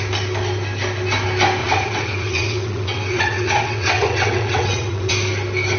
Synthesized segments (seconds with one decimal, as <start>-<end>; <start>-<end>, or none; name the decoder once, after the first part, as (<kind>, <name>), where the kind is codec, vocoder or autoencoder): 1.6-5.1 (vocoder, WaveNeXt)